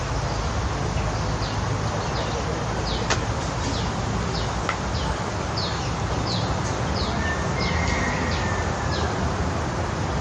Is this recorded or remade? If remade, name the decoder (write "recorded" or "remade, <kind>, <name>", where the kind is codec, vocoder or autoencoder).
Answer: recorded